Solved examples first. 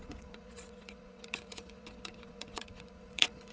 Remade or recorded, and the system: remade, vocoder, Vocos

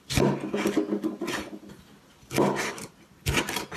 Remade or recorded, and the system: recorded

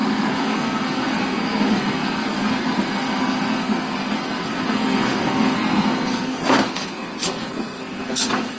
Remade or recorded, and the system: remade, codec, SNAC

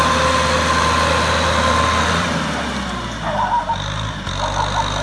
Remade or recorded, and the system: recorded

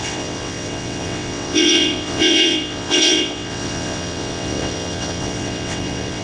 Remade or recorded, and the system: remade, vocoder, WaveNeXt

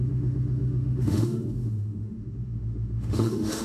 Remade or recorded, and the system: remade, autoencoder, DAC-VAE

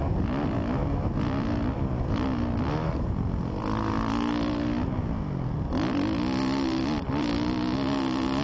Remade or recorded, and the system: recorded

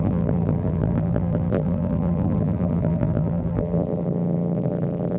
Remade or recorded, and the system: remade, vocoder, BigVGAN v2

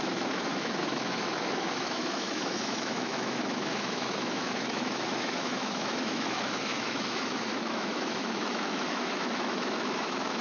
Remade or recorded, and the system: remade, autoencoder, DAC-VAE